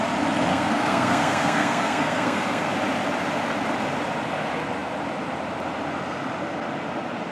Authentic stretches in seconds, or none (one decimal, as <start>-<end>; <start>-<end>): 0.0-0.5; 2.7-7.3

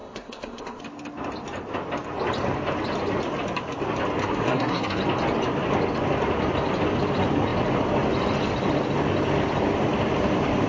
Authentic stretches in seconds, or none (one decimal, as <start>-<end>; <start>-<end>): 0.8-4.2; 5.0-10.7

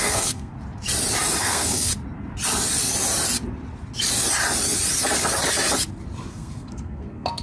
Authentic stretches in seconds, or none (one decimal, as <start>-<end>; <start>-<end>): 0.5-1.4; 1.9-6.3

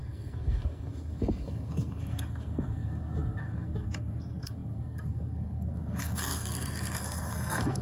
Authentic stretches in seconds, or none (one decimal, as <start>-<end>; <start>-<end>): none

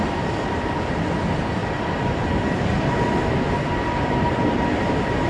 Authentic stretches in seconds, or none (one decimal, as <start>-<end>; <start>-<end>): 0.0-5.3

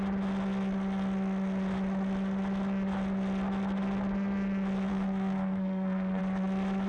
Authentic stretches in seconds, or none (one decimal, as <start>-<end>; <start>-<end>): 0.0-4.9; 6.2-6.9

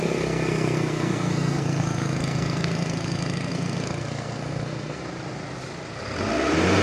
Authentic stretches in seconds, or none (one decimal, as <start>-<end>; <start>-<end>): 5.0-6.8

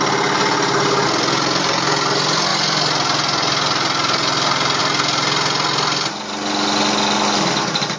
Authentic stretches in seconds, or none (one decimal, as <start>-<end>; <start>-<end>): 0.0-8.0